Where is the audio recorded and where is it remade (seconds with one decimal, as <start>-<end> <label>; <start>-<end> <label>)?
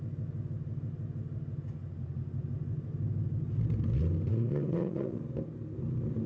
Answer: 0.0-4.3 recorded; 4.3-5.2 remade; 5.2-6.3 recorded